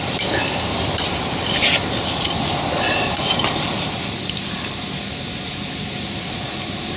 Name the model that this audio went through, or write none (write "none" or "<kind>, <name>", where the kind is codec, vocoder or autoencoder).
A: none